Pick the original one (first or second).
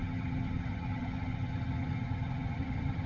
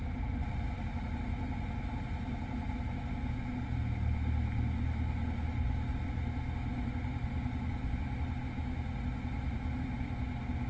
second